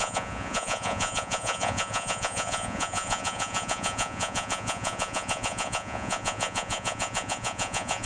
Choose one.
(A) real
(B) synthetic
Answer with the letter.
B